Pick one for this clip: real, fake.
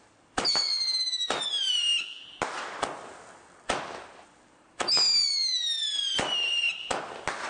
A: real